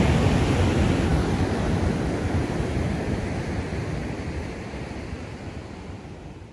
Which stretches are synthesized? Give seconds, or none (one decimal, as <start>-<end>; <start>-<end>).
1.1-1.9; 2.4-6.5